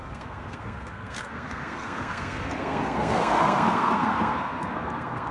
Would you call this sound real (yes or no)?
no